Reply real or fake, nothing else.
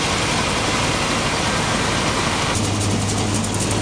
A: real